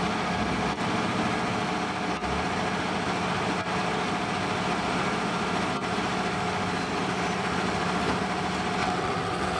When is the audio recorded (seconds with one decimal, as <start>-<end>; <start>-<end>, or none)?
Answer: 0.0-8.8